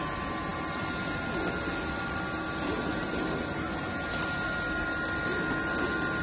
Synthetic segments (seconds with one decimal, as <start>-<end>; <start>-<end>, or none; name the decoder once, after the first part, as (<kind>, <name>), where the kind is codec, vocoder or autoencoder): none